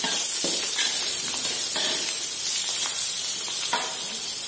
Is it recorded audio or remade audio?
recorded